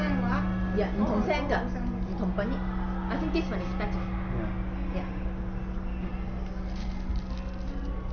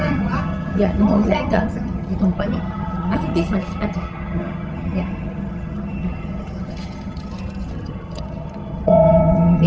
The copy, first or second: second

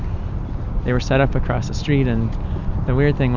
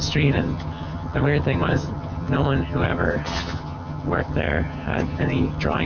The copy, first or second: second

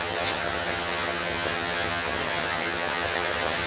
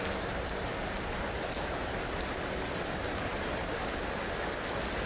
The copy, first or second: first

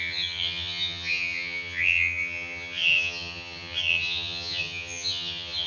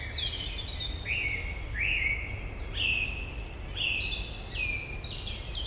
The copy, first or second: first